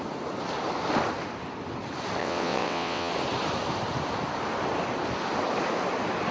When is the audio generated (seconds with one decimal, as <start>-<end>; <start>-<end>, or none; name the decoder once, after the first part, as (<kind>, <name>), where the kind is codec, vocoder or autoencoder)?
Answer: 2.2-3.1 (vocoder, WaveNeXt)